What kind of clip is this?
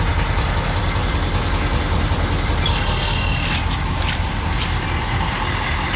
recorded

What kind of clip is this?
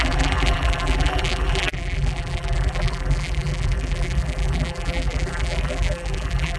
remade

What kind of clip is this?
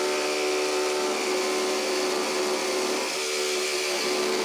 recorded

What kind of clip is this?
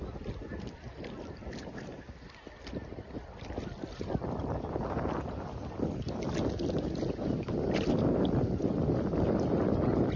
recorded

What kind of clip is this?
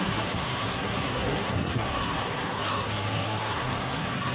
remade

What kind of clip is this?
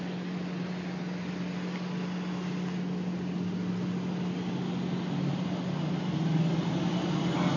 recorded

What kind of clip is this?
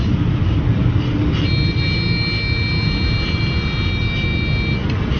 recorded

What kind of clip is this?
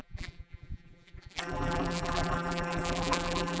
remade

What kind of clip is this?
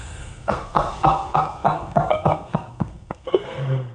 remade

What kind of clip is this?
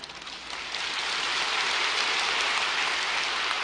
recorded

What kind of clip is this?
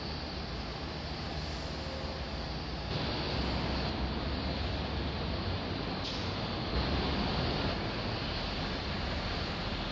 recorded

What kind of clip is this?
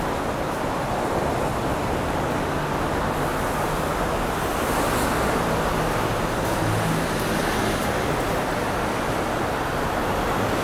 recorded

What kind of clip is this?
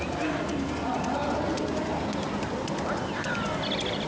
recorded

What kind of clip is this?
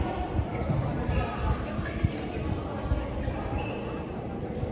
recorded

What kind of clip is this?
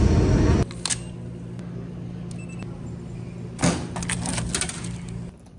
recorded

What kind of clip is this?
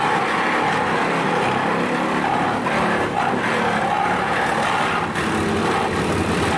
recorded